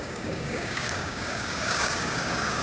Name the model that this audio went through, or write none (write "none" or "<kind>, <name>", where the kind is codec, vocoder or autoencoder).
codec, DAC